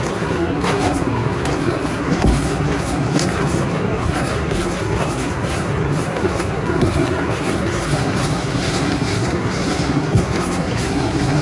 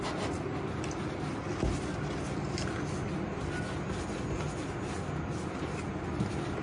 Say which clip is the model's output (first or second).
first